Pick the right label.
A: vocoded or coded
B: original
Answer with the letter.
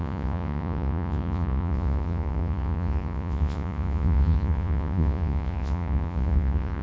A